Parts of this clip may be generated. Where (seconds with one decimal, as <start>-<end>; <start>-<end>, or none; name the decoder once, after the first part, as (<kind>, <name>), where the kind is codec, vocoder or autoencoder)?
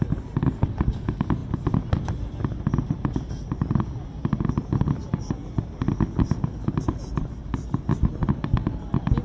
none